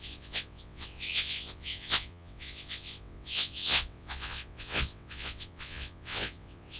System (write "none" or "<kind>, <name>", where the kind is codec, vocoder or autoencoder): vocoder, WaveNeXt